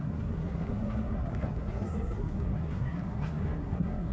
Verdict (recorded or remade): remade